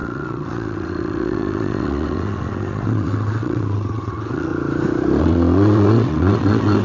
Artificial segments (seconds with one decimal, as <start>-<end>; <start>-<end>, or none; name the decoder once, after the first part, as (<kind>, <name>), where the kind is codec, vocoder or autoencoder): 0.0-4.5 (vocoder, WaveNeXt); 5.2-6.8